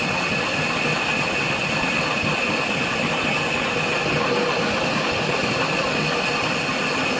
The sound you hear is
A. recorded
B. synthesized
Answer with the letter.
A